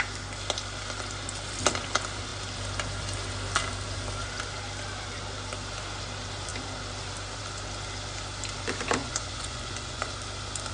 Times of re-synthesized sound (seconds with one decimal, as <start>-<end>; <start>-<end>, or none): 9.0-10.1

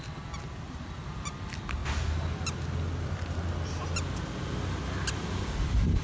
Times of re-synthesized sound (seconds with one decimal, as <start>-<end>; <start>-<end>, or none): none

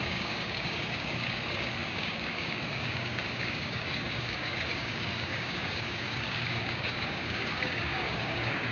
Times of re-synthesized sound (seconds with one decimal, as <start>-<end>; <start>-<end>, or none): 0.0-8.7